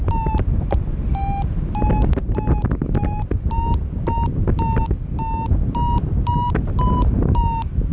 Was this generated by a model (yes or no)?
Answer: no